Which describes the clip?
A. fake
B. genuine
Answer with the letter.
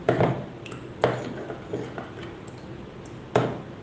B